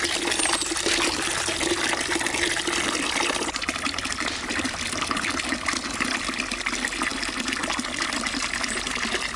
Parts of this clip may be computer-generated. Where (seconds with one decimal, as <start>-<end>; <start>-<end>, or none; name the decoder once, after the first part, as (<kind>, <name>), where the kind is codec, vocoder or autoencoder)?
none